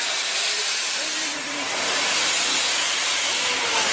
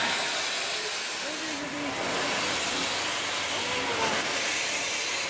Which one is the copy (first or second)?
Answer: first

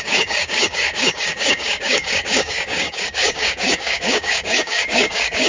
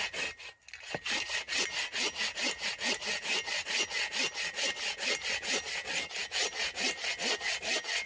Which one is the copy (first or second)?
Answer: first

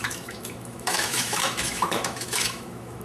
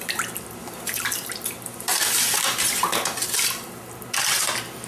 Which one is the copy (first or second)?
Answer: first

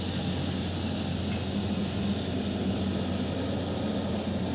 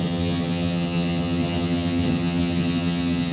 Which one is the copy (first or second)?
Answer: second